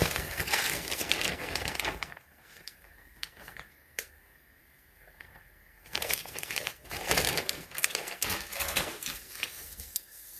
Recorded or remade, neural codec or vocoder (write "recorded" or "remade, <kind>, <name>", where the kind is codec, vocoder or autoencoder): remade, codec, SNAC